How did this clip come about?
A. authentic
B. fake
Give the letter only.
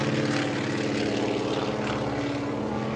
A